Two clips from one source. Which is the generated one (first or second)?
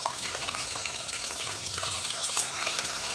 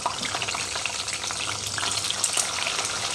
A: first